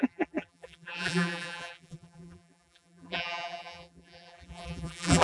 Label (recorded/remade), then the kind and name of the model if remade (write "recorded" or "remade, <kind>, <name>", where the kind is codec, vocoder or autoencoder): remade, vocoder, BigVGAN v2